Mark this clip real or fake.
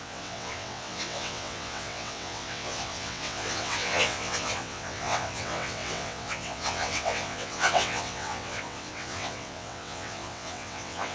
fake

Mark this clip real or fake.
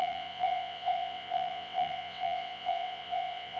fake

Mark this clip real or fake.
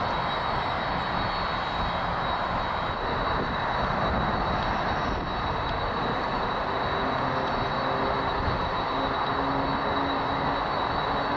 real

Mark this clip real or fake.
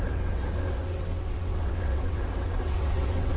fake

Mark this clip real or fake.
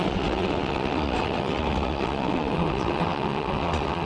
fake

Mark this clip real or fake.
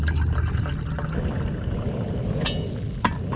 real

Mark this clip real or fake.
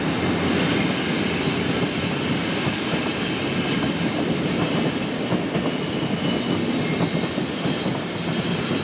real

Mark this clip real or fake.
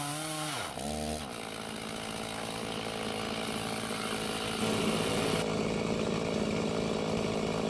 real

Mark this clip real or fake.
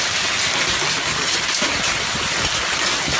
real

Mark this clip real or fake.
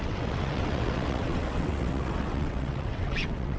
fake